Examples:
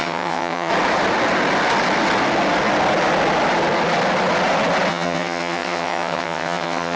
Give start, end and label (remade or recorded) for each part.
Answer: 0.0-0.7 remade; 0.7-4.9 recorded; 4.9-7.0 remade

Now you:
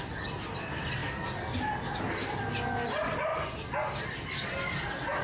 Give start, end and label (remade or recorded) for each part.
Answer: 0.0-5.2 recorded

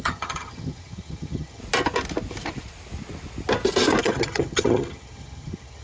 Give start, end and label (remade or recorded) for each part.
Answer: 0.0-1.6 remade; 1.6-4.0 recorded; 4.0-5.8 remade

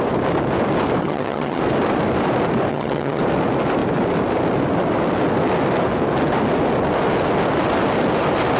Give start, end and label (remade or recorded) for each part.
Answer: 0.0-1.0 recorded; 1.0-1.6 remade; 1.6-2.7 recorded; 2.7-3.2 remade; 3.2-8.6 recorded